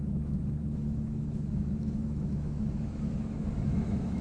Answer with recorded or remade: remade